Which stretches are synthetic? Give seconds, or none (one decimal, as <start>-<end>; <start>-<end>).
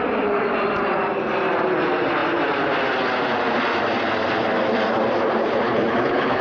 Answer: 5.4-6.4